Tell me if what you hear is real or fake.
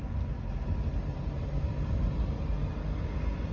real